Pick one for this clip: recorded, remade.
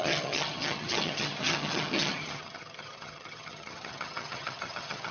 remade